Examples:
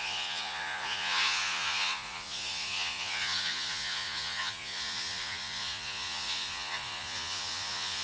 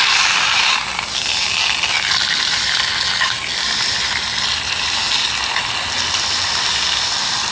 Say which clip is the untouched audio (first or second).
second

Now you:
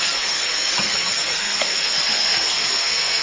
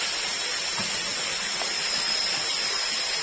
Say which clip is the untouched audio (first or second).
second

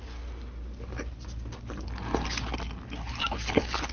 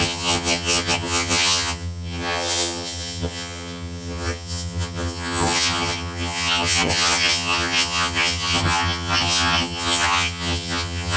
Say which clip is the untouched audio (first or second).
first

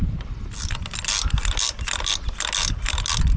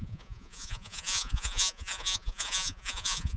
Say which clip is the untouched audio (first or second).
first